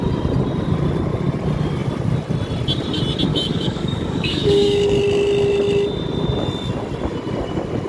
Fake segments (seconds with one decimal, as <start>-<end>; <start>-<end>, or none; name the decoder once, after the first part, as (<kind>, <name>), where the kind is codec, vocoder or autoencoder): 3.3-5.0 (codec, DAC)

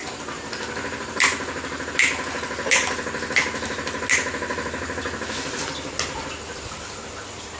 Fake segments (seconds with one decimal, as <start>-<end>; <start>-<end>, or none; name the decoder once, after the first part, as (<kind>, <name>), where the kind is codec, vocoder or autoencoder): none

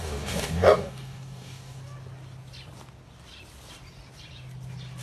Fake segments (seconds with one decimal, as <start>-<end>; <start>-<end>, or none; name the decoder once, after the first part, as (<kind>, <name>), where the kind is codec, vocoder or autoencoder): 0.0-1.8 (codec, DAC)